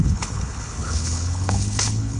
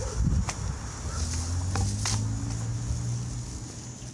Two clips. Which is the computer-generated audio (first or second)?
first